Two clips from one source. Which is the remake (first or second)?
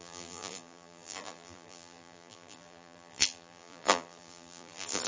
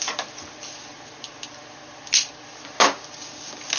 first